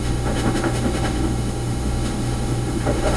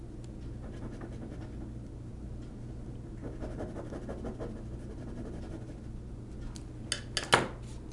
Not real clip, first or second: first